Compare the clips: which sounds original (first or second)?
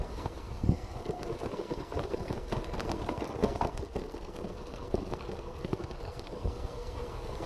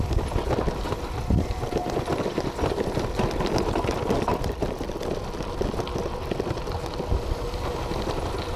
second